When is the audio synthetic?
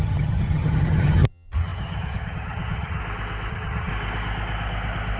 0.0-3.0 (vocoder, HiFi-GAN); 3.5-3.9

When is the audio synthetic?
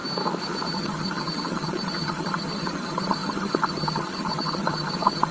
0.7-5.3 (vocoder, HiFi-GAN)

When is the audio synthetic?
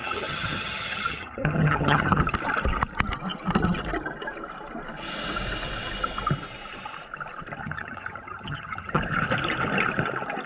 0.0-2.2 (vocoder, HiFi-GAN); 7.6-9.0